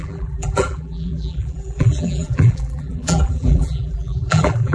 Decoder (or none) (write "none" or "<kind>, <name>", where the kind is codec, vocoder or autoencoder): vocoder, BigVGAN v2